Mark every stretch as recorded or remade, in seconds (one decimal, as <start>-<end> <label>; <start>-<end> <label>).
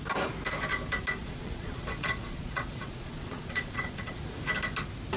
0.0-1.2 recorded; 1.2-4.1 remade; 4.1-5.2 recorded